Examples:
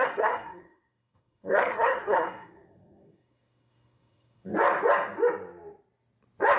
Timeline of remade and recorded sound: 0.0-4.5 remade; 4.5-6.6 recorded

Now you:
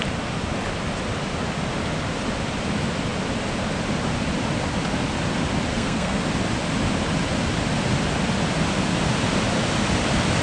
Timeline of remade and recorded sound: 0.0-5.7 recorded; 5.7-6.2 remade; 6.2-10.4 recorded

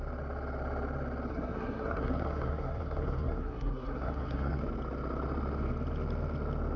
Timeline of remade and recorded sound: 0.0-1.3 recorded; 1.3-4.6 remade; 4.6-6.8 recorded

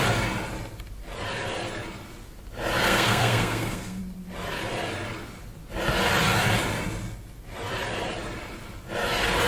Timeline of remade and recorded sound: 0.0-2.8 recorded; 2.8-4.0 remade; 4.0-9.5 recorded

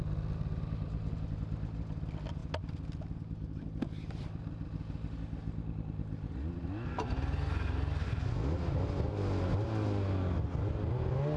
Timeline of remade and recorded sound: 0.0-11.4 recorded

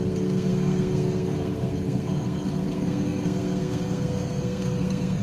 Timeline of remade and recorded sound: 0.0-5.2 remade

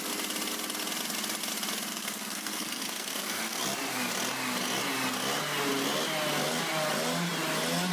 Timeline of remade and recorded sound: 0.0-1.9 recorded; 1.9-3.6 remade; 3.6-7.9 recorded